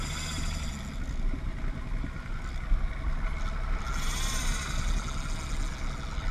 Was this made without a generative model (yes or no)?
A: yes